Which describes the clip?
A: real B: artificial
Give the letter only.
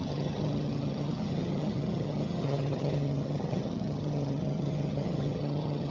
B